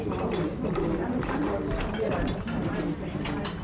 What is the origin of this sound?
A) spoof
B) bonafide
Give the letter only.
A